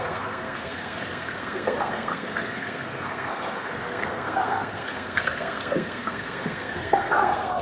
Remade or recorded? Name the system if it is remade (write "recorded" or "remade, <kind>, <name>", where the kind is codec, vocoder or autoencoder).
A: remade, codec, SNAC